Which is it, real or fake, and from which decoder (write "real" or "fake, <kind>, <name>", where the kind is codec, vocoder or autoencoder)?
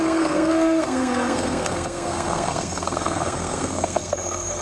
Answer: fake, codec, SNAC